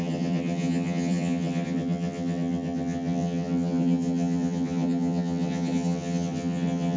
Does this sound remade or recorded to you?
remade